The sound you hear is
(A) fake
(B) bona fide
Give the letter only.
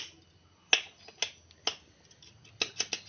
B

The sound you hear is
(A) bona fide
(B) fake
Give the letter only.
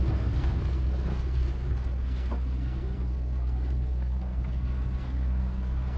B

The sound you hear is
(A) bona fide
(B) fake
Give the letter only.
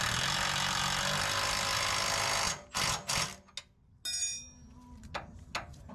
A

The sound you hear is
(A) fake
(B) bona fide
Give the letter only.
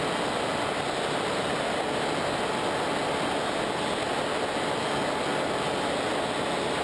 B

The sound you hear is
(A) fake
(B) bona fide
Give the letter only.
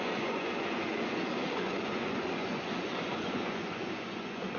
A